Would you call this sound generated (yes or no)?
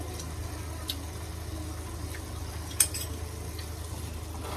no